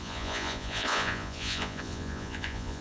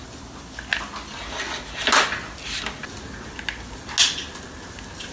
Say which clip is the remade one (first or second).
first